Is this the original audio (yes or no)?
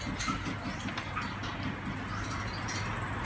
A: yes